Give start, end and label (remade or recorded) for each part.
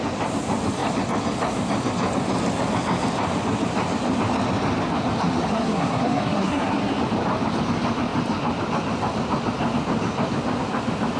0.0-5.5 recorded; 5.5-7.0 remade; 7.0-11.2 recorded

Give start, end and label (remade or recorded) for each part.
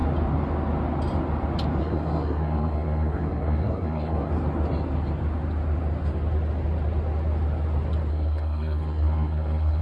0.0-1.8 recorded; 1.8-4.3 remade; 4.3-8.1 recorded; 8.1-9.8 remade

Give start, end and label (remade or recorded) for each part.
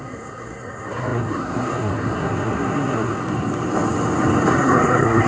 0.0-3.2 remade; 3.2-4.5 recorded; 4.5-5.3 remade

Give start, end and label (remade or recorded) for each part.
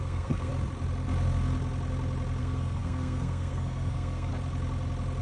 0.0-0.5 remade; 0.5-2.4 recorded; 2.4-4.3 remade; 4.3-5.2 recorded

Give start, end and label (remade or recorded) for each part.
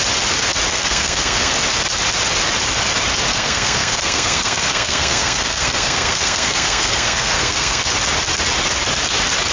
0.0-0.7 recorded; 0.7-1.5 remade; 1.5-3.3 recorded; 3.3-7.8 remade; 7.8-9.5 recorded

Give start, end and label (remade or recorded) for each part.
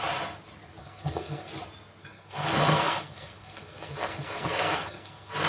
0.0-0.8 recorded; 0.8-1.5 remade; 1.5-2.0 recorded; 2.0-5.5 remade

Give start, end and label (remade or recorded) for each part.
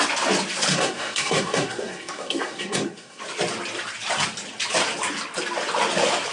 0.0-0.7 recorded; 0.7-3.2 remade; 3.2-6.3 recorded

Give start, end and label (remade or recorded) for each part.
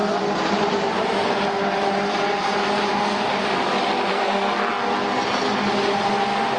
0.0-4.1 recorded; 4.1-4.7 remade; 4.7-6.6 recorded